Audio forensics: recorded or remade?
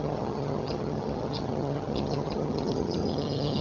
remade